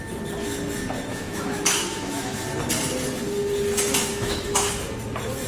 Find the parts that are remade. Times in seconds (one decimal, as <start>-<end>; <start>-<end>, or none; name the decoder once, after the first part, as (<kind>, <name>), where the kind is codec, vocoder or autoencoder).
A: 1.1-2.4 (autoencoder, DAC-VAE); 4.1-4.7